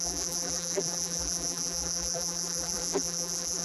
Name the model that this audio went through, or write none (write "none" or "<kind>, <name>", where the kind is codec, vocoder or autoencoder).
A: vocoder, BigVGAN v2